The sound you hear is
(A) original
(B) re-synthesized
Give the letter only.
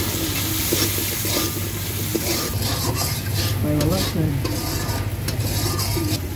A